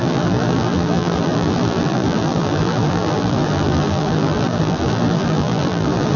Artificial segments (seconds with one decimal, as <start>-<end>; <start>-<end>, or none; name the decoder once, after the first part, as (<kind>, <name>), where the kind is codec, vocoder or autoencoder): 0.0-6.2 (vocoder, BigVGAN v2)